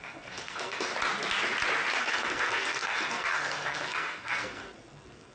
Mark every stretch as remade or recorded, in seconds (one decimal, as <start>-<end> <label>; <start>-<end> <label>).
0.0-0.9 remade; 0.9-2.0 recorded; 2.0-5.3 remade